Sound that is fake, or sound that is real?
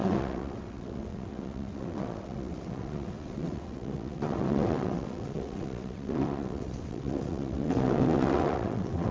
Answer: fake